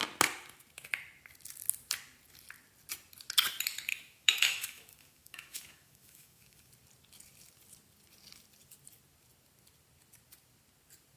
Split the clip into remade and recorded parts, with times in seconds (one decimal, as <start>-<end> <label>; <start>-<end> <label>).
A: 0.0-3.9 recorded; 3.9-6.7 remade; 6.7-11.2 recorded